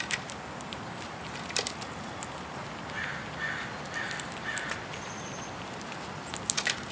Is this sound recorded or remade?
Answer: recorded